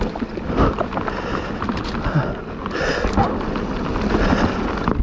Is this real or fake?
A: real